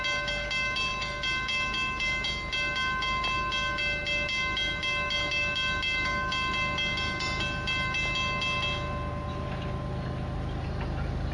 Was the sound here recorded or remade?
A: recorded